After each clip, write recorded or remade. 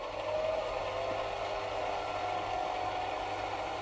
recorded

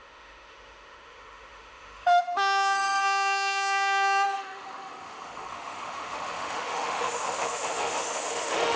remade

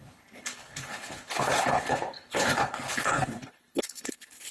remade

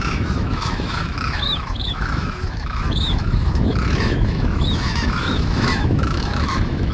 remade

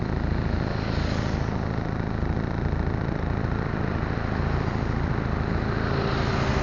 recorded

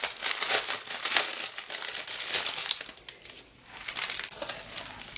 recorded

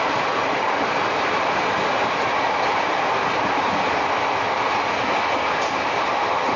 recorded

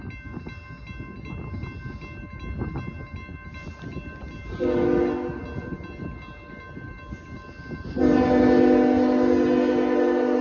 recorded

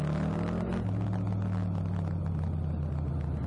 recorded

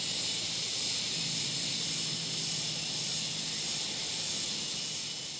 recorded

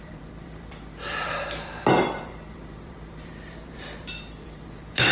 remade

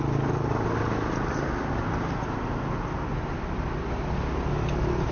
recorded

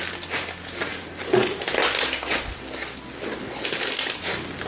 recorded